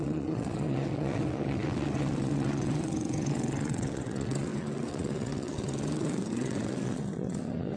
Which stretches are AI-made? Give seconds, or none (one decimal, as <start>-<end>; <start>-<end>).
0.0-7.8